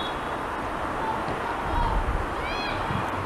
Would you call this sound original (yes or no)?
yes